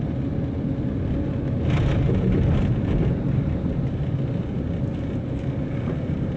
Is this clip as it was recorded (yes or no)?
yes